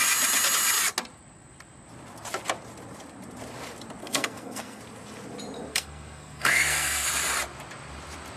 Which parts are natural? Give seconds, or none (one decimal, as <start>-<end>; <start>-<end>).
0.0-4.0; 4.8-5.7; 7.1-8.4